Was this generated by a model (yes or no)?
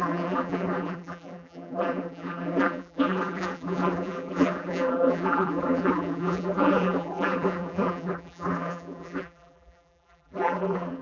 yes